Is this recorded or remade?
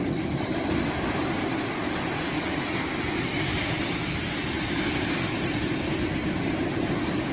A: recorded